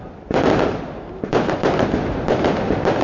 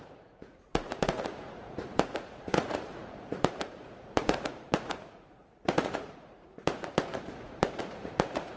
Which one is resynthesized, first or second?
second